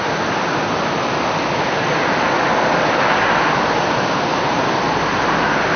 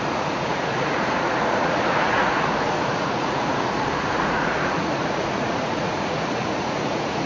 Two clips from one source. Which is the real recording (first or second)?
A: first